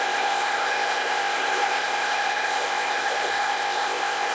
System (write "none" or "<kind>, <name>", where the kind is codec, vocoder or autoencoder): codec, ZipCodec